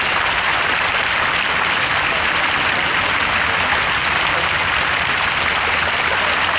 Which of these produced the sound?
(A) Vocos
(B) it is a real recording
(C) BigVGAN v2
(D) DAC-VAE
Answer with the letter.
B